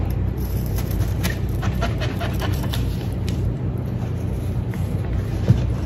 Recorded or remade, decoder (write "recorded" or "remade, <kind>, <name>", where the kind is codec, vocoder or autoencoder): remade, vocoder, BigVGAN v2